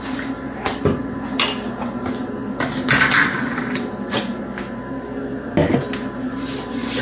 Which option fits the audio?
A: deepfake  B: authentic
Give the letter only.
B